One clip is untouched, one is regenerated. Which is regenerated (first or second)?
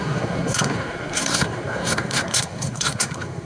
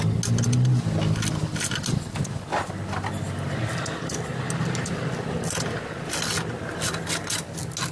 first